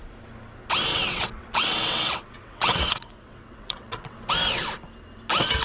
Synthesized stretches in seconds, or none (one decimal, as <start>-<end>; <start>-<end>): 0.9-4.3